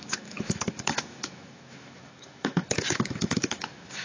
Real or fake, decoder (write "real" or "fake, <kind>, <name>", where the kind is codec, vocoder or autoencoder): fake, autoencoder, DAC-VAE